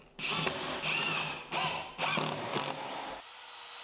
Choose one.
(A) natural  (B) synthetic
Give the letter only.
A